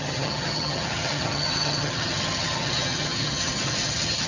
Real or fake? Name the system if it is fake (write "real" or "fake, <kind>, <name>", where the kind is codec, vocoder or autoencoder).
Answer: fake, vocoder, HiFi-GAN